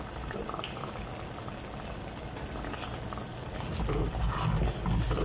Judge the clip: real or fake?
real